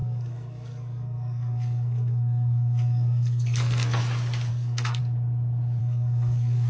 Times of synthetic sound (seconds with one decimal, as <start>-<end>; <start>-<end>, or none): 0.0-4.0; 4.5-5.0; 5.8-6.7